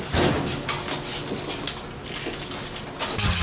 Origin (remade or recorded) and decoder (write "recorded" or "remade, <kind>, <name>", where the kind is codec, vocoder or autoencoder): recorded